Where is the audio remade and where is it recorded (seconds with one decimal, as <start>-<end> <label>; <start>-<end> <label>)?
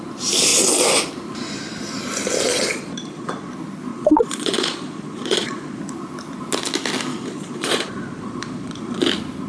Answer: 0.0-2.5 recorded; 2.5-3.5 remade; 3.5-3.9 recorded; 3.9-5.8 remade; 5.8-7.1 recorded; 7.1-9.0 remade; 9.0-9.5 recorded